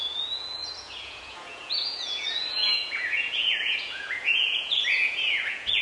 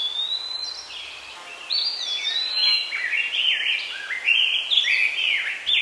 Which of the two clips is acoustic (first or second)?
second